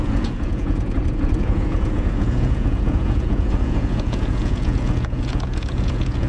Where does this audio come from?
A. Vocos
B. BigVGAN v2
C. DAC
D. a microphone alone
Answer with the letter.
A